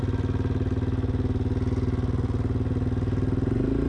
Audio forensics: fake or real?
real